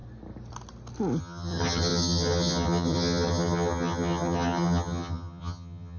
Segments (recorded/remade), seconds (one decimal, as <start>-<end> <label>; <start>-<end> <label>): 0.0-1.2 recorded; 1.2-6.0 remade